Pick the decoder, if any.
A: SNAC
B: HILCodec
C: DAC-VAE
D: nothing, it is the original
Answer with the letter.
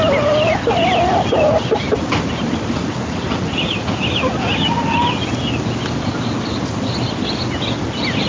D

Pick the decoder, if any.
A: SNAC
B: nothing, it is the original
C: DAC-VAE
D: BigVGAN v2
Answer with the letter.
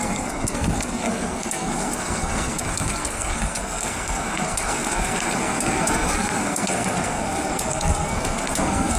A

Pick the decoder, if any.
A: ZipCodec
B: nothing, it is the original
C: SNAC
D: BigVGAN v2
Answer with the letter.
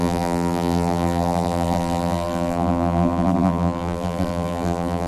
D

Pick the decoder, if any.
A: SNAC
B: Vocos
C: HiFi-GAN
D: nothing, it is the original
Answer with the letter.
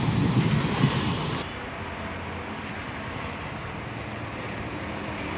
D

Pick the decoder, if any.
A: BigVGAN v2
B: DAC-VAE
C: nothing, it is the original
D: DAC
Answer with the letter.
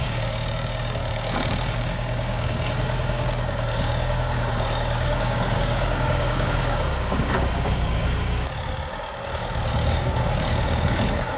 D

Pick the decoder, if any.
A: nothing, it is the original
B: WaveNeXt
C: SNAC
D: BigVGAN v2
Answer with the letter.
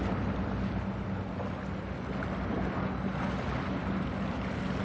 A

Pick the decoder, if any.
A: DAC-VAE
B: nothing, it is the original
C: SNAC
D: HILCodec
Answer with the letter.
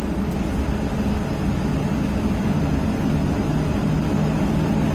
B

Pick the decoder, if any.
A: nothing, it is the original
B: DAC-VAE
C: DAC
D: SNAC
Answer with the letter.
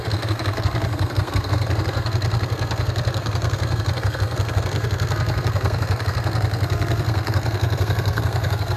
D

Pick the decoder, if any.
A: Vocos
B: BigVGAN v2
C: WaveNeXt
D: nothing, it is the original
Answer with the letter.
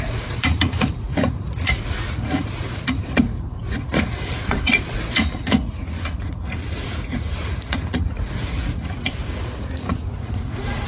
A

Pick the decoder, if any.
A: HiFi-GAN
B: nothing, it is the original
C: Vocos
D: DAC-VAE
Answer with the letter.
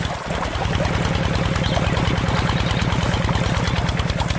B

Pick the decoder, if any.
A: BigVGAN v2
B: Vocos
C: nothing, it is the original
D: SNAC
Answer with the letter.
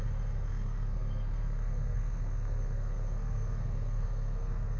D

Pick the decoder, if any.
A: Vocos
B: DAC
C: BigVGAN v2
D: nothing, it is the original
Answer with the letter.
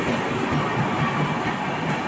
D